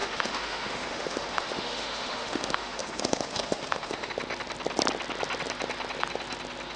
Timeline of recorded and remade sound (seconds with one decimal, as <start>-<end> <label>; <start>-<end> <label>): 0.0-4.1 remade; 4.1-6.8 recorded